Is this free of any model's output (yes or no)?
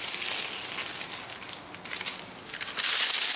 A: yes